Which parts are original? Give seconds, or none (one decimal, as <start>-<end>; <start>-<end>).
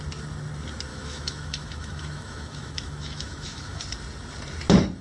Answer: 0.0-0.9; 3.8-5.0